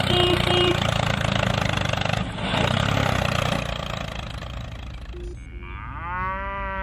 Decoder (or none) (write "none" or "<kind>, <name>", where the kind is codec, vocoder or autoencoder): none